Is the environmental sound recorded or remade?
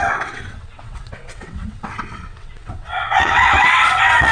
remade